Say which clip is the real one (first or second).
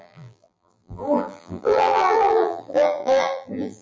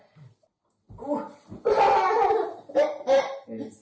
second